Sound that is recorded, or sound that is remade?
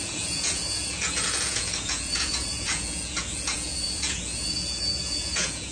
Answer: remade